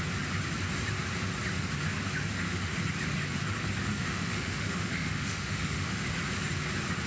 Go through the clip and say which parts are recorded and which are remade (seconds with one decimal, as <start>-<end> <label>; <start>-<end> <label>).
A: 0.0-2.2 recorded; 2.2-2.8 remade; 2.8-3.9 recorded; 3.9-6.1 remade; 6.1-7.1 recorded